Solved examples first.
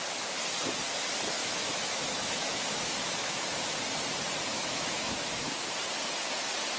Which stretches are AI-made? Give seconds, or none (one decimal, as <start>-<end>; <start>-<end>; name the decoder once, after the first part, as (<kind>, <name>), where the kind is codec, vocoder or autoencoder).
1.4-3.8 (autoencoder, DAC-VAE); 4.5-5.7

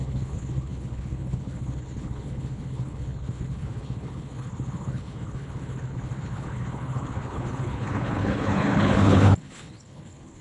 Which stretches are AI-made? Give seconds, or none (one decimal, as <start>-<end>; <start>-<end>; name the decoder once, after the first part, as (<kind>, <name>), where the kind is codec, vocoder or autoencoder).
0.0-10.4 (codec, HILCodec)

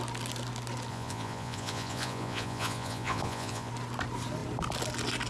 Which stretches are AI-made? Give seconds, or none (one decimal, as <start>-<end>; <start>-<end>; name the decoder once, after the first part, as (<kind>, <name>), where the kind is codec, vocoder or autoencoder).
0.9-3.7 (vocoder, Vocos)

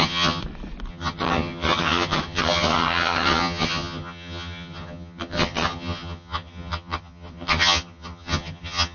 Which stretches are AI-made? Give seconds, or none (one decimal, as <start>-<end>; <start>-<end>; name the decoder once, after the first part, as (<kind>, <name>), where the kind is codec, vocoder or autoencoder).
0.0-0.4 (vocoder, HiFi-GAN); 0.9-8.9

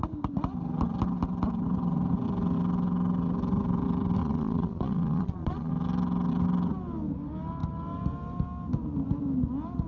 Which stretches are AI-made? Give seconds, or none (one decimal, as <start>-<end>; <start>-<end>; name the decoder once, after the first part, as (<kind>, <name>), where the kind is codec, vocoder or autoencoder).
4.2-5.7 (vocoder, Vocos)